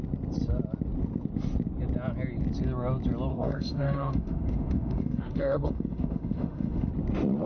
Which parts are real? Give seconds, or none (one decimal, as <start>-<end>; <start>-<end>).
0.0-3.3; 6.9-7.5